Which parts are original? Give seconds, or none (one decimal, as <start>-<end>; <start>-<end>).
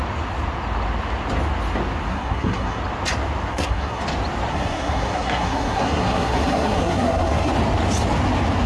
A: 0.0-2.1; 2.8-3.5; 4.0-4.5; 7.5-8.7